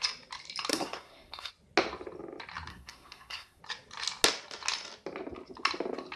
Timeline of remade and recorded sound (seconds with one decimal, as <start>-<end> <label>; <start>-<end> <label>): 0.0-0.7 recorded; 0.7-1.5 remade; 1.5-2.7 recorded; 2.7-3.6 remade; 3.6-6.2 recorded